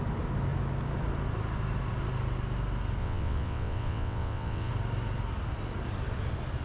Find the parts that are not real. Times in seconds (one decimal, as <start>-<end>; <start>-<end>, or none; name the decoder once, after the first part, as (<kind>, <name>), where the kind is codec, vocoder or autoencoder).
3.0-4.7 (vocoder, WaveNeXt)